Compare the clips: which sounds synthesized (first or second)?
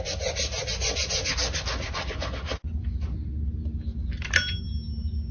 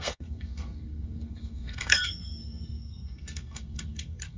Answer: second